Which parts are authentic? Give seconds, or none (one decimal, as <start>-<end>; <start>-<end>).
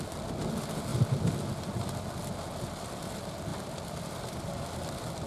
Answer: 0.0-3.5; 4.5-5.3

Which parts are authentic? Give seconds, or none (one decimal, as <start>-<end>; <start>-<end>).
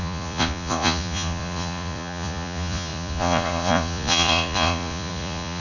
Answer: none